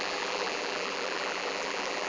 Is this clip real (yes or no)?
no